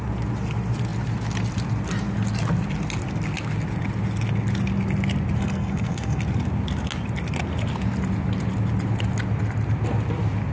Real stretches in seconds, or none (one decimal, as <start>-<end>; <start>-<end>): 0.0-5.4; 6.2-10.5